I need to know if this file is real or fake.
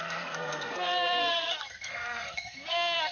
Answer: fake